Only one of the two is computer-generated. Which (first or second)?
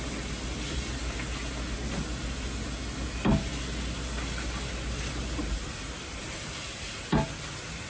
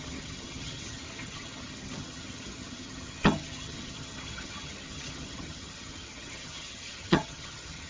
second